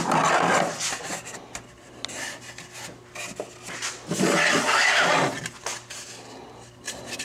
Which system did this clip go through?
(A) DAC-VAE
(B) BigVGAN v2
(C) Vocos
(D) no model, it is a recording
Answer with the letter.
D